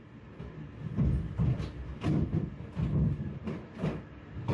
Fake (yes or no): yes